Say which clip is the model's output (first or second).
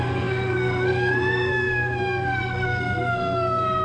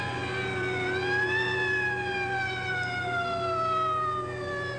first